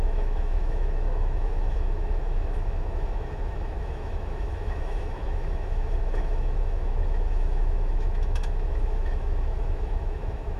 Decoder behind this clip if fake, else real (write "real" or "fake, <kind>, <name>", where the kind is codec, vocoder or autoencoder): fake, autoencoder, DAC-VAE